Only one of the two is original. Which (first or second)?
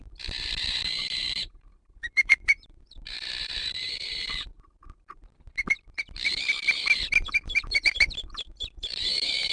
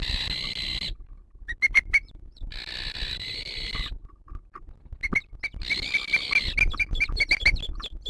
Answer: second